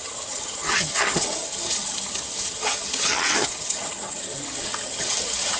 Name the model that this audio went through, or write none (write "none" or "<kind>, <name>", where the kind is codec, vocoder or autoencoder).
vocoder, HiFi-GAN